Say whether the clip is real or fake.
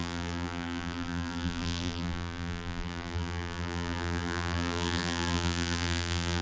fake